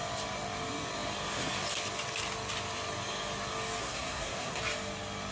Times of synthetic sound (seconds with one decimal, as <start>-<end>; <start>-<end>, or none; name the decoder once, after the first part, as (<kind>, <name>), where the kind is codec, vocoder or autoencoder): 3.8-4.6 (codec, SNAC)